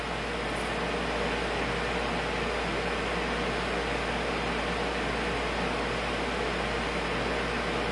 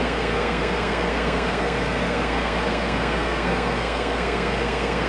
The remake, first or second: second